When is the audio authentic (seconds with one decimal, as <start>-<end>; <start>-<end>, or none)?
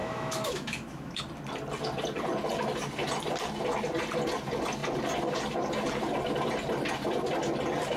1.2-8.0